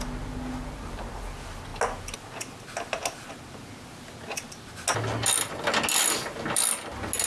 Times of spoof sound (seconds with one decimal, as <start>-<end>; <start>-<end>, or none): none